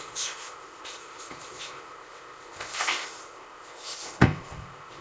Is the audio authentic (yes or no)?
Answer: no